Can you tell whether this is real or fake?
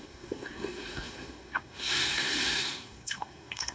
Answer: fake